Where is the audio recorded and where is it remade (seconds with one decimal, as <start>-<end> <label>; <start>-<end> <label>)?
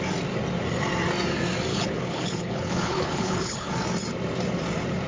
0.0-1.7 recorded; 1.7-3.7 remade; 3.7-5.1 recorded